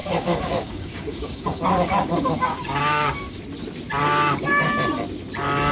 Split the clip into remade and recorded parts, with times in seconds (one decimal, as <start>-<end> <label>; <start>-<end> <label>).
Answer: 0.0-3.4 remade; 3.4-4.0 recorded; 4.0-4.7 remade; 4.7-5.7 recorded